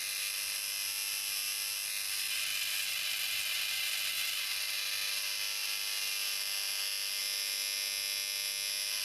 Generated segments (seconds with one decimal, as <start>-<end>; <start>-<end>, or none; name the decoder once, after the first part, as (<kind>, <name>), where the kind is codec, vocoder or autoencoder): none